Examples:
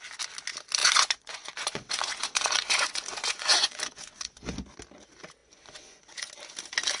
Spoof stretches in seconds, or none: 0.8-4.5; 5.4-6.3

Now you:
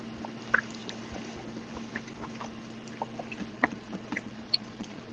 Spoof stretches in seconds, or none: 3.5-5.1

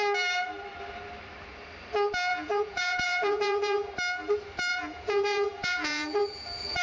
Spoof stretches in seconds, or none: 2.3-3.9; 4.7-6.8

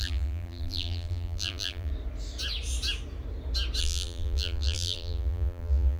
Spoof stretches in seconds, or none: 0.0-1.9; 3.8-6.0